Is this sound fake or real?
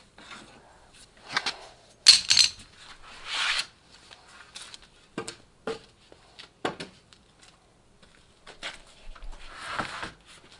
real